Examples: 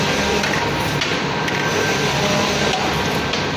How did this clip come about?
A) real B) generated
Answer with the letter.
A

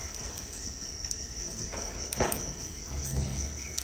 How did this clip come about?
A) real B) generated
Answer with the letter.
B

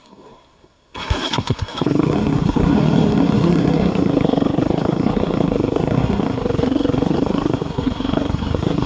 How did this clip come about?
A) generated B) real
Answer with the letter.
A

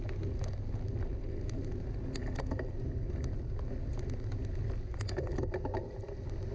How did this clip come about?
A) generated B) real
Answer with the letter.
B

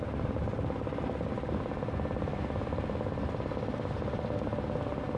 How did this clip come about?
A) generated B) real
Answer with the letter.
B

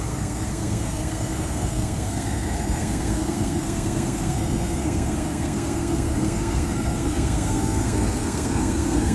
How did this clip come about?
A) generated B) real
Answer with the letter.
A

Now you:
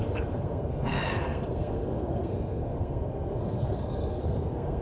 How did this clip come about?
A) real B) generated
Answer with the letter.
B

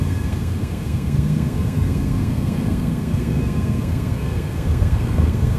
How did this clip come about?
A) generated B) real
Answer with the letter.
A